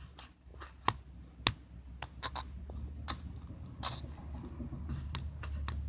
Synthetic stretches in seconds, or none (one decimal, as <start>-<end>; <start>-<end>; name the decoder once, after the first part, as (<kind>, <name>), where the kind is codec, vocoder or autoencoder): none